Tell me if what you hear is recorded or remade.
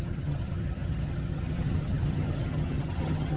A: remade